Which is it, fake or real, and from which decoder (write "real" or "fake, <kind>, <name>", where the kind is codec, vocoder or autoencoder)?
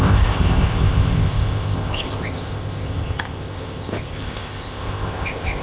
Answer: fake, codec, ZipCodec